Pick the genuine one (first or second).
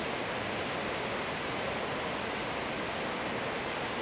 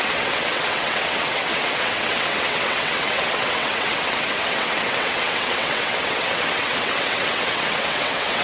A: first